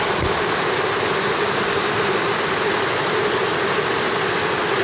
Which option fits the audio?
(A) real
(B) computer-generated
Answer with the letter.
A